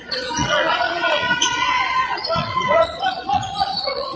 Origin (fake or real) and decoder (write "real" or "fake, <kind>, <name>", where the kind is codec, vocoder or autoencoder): fake, vocoder, Vocos